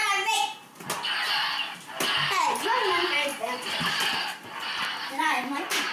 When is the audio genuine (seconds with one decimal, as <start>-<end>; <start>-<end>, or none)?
0.0-2.4; 3.3-3.8

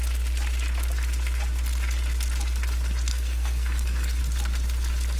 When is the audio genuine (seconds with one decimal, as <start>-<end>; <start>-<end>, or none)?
0.0-3.1; 4.2-5.2